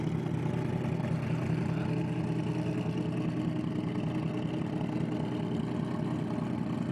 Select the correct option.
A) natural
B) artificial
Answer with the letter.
A